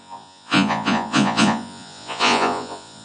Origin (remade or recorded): remade